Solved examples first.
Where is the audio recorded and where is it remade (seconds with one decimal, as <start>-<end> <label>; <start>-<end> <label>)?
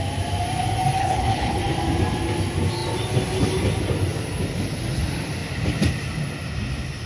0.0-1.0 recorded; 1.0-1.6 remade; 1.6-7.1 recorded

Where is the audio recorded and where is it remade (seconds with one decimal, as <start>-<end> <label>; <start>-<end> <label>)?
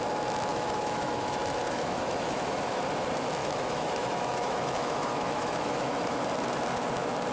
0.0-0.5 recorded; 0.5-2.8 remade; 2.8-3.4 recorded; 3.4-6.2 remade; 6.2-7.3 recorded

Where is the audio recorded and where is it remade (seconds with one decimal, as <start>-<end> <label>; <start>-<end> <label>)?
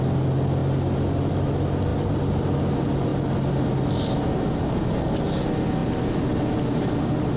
0.0-1.9 recorded; 1.9-2.7 remade; 2.7-7.4 recorded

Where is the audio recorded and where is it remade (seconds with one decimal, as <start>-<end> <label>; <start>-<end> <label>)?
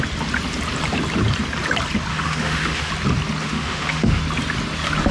0.0-2.1 recorded; 2.1-2.9 remade; 2.9-3.4 recorded; 3.4-4.2 remade; 4.2-5.1 recorded